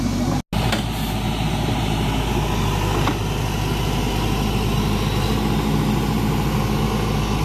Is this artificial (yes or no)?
no